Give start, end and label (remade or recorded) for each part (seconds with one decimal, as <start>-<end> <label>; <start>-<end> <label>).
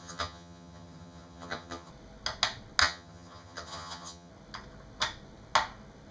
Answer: 0.0-1.9 remade; 1.9-2.8 recorded; 2.8-4.3 remade; 4.3-6.1 recorded